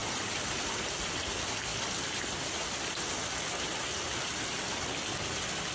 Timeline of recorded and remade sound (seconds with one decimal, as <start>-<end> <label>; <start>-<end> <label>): 0.0-0.6 remade; 0.6-1.7 recorded; 1.7-5.1 remade; 5.1-5.7 recorded

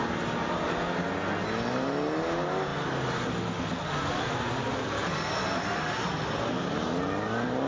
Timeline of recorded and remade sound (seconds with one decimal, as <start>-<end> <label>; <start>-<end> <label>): 0.0-7.7 recorded

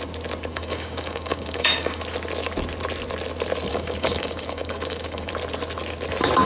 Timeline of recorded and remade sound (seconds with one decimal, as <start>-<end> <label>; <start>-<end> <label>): 0.0-0.5 recorded; 0.5-2.0 remade; 2.0-3.7 recorded; 3.7-5.3 remade; 5.3-6.5 recorded

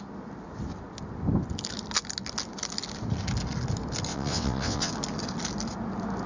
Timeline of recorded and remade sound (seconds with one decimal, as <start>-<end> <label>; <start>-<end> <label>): 0.0-4.1 recorded; 4.1-4.9 remade; 4.9-6.3 recorded

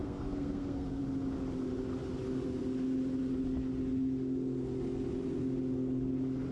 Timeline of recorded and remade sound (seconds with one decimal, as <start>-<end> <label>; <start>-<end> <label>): 0.0-1.0 remade; 1.0-6.5 recorded